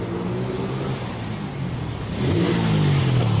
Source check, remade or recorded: recorded